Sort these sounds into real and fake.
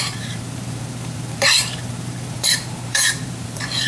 fake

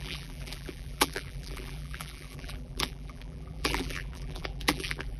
fake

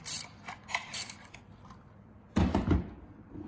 fake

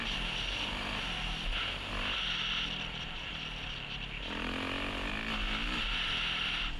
real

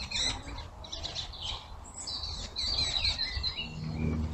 real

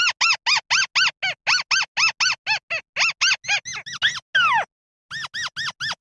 real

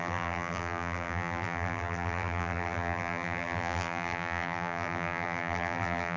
fake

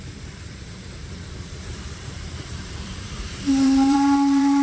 fake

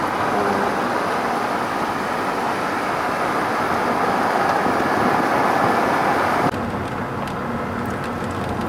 real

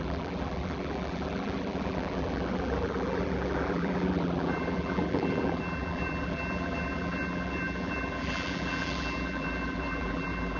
fake